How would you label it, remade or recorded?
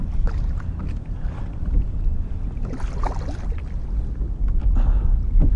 recorded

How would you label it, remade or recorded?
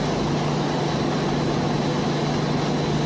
recorded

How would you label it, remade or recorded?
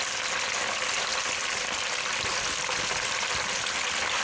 recorded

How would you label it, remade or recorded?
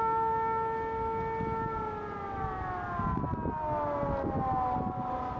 recorded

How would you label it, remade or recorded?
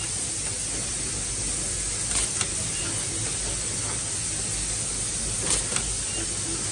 recorded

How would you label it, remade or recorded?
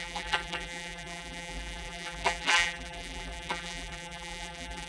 remade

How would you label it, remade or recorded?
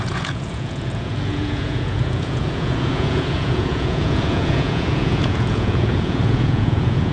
remade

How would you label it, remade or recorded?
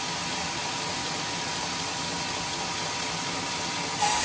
recorded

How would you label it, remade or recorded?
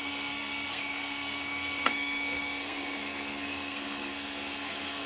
remade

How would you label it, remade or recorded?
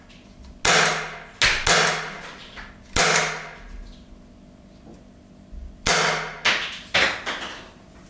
recorded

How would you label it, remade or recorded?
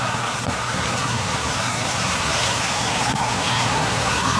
remade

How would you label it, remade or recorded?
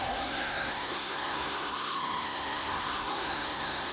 remade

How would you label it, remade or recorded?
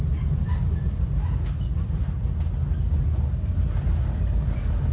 recorded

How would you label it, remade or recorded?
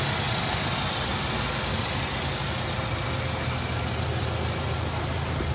recorded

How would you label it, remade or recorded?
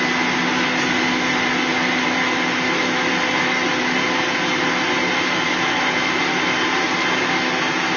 recorded